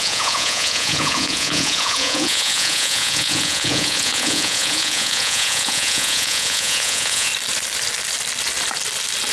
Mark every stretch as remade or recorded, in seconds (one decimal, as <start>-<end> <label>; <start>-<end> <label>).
0.0-7.3 remade; 7.3-9.3 recorded